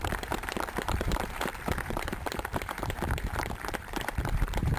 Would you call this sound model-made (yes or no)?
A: yes